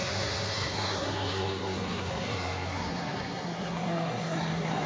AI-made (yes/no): yes